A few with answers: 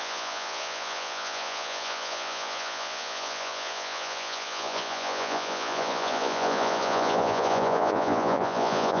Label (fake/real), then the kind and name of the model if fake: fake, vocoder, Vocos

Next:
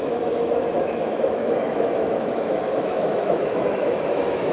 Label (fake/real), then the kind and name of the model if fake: fake, autoencoder, DAC-VAE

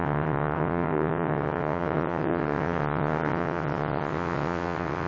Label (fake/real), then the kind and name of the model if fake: fake, vocoder, WaveNeXt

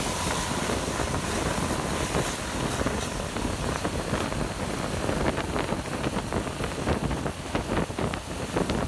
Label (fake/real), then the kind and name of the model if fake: real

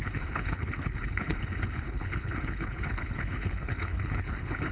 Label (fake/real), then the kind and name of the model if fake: fake, codec, HILCodec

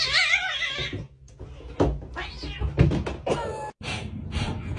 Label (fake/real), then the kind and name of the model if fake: real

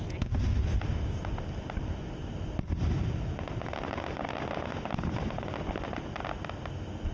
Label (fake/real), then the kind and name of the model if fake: real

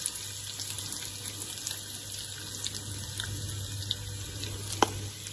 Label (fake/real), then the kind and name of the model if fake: real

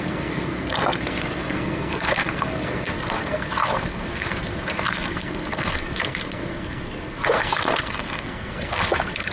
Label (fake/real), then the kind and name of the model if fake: fake, codec, SNAC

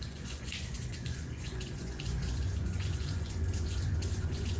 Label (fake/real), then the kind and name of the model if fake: fake, vocoder, Vocos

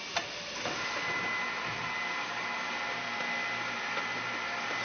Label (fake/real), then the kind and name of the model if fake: real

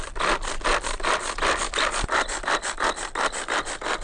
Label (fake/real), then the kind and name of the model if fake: real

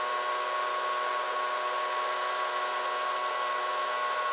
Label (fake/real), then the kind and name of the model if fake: real